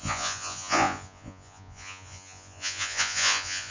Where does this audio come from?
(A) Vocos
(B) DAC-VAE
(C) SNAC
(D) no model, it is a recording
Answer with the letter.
A